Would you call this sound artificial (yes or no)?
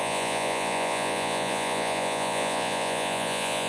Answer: yes